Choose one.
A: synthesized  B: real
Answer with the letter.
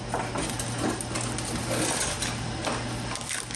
B